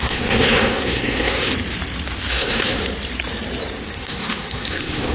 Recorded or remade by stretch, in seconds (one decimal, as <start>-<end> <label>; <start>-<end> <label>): 0.0-1.5 remade; 1.5-2.3 recorded; 2.3-2.8 remade; 2.8-3.9 recorded; 3.9-5.1 remade